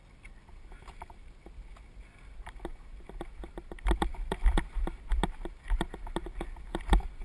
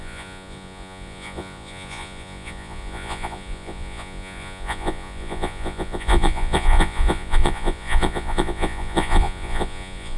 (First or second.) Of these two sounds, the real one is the first